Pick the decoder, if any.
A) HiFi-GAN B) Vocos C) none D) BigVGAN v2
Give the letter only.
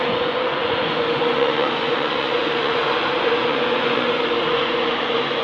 B